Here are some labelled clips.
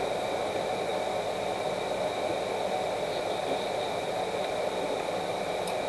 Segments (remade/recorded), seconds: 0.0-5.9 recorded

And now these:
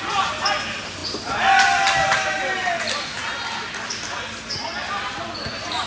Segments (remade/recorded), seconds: 0.0-5.9 recorded

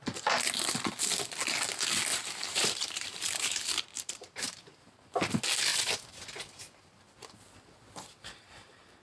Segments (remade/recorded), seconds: 0.0-2.1 recorded; 2.1-4.6 remade; 4.6-5.7 recorded; 5.7-6.6 remade; 6.6-9.0 recorded

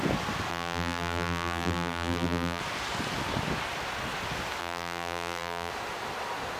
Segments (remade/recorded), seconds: 0.0-0.5 recorded; 0.5-2.6 remade; 2.6-4.6 recorded; 4.6-5.7 remade; 5.7-6.6 recorded

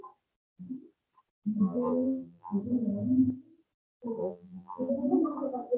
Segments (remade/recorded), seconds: 0.0-1.6 recorded; 1.6-2.6 remade; 2.6-4.2 recorded; 4.2-4.9 remade; 4.9-5.8 recorded